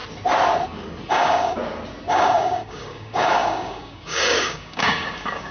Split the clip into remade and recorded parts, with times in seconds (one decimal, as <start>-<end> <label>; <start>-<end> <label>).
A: 0.0-1.1 recorded; 1.1-1.6 remade; 1.6-2.1 recorded; 2.1-5.5 remade